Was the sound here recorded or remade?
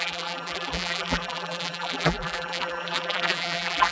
remade